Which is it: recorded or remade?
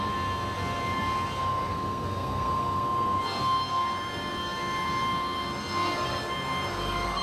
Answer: remade